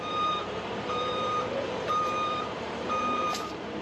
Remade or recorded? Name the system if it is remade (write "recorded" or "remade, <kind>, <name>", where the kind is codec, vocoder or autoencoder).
remade, vocoder, BigVGAN v2